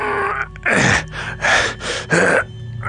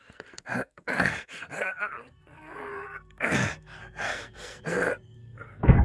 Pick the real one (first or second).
first